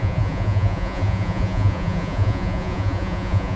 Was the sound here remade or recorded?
remade